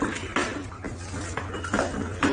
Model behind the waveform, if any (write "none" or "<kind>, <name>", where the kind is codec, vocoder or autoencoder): none